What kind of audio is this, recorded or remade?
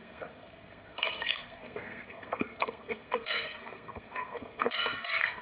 remade